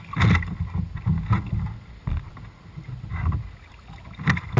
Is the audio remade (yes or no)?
no